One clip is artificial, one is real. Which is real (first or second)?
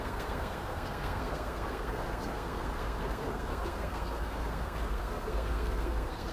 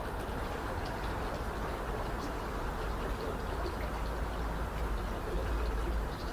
second